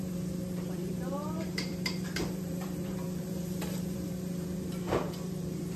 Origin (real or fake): fake